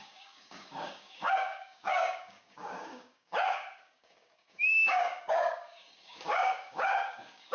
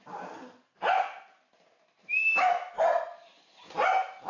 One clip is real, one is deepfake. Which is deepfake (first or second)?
first